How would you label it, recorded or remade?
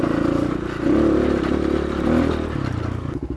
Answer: recorded